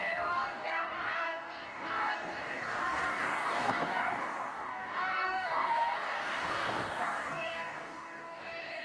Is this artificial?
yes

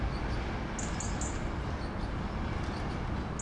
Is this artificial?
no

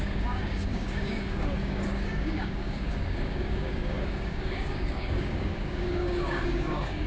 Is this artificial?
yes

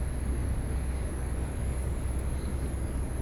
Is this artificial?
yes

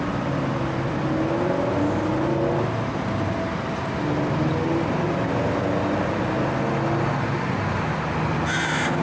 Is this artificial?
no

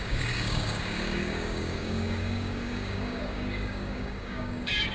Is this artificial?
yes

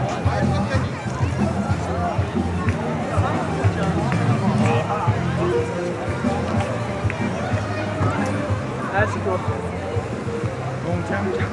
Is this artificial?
no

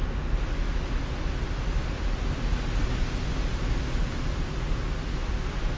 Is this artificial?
no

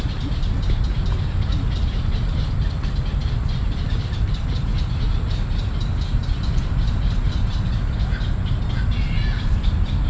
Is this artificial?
no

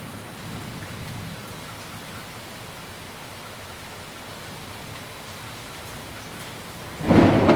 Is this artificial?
no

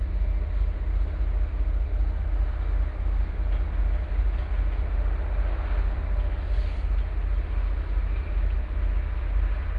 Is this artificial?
no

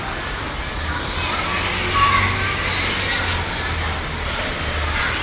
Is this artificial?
no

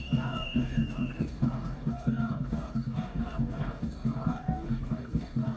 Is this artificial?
yes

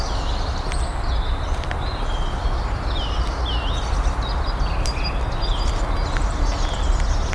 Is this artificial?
no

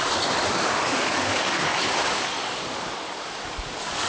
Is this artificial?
yes